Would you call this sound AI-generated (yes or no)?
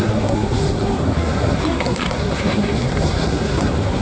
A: yes